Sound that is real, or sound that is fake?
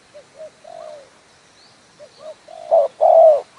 real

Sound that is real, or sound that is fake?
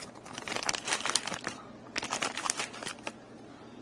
real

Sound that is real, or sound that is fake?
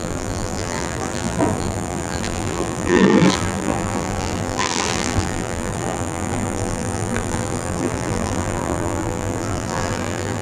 fake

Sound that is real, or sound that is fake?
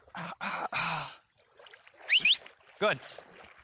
real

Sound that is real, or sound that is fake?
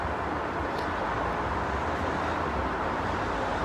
real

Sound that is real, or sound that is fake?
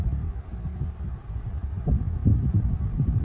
real